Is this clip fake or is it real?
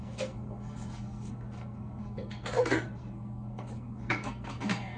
fake